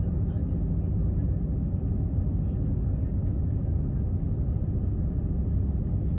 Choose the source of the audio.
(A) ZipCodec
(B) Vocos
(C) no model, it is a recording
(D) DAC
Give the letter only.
C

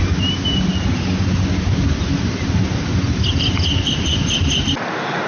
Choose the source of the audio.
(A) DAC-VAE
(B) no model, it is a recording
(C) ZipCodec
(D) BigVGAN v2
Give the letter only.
B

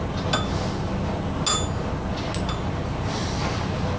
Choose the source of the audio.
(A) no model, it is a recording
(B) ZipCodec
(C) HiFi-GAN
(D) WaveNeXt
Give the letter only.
A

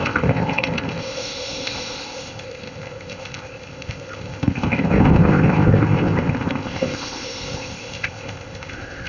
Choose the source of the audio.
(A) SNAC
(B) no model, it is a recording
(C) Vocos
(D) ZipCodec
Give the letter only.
D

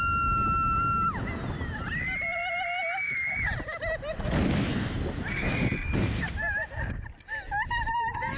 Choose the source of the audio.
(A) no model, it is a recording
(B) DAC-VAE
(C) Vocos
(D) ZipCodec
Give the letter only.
A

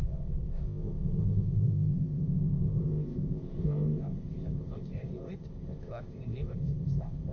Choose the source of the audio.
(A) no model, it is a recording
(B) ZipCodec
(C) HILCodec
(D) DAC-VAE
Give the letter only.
B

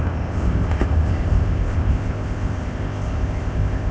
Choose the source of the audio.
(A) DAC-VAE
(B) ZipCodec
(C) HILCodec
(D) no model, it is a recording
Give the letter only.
B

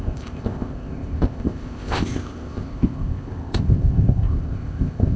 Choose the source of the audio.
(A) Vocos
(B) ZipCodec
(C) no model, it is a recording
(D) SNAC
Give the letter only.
B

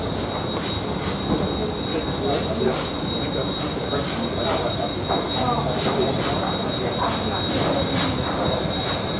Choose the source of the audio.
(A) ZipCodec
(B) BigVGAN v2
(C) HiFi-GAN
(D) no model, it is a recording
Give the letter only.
D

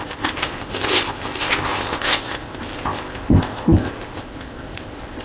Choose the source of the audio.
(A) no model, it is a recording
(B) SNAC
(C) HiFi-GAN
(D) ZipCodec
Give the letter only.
D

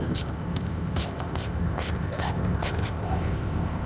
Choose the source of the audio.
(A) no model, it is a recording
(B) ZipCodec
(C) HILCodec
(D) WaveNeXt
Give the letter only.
B